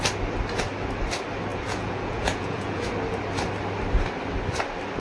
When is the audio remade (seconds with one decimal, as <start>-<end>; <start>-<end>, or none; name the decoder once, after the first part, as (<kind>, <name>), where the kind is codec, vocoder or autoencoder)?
1.5-2.9 (vocoder, Vocos)